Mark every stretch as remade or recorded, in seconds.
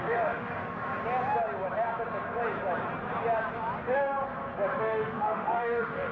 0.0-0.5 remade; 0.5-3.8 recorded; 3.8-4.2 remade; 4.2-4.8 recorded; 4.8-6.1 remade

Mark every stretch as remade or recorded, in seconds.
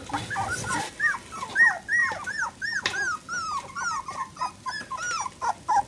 0.0-5.9 recorded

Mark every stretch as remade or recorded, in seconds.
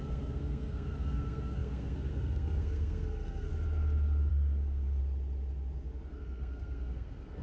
0.0-3.5 remade; 3.5-4.3 recorded; 4.3-5.0 remade; 5.0-6.1 recorded; 6.1-7.4 remade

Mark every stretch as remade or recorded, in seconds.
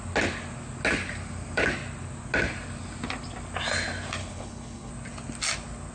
0.0-4.2 recorded; 4.2-4.9 remade; 4.9-5.9 recorded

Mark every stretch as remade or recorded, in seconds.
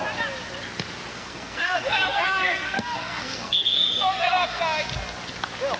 0.0-1.1 recorded; 1.1-4.6 remade; 4.6-5.8 recorded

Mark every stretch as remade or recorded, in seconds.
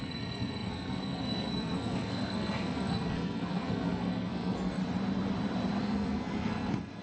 0.0-4.8 remade; 4.8-5.8 recorded; 5.8-7.0 remade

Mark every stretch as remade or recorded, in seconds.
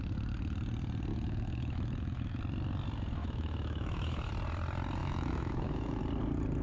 0.0-1.1 recorded; 1.1-2.4 remade; 2.4-3.2 recorded; 3.2-4.3 remade; 4.3-5.0 recorded; 5.0-6.0 remade; 6.0-6.6 recorded